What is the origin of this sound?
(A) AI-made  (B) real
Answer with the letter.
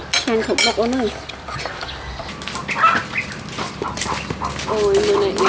B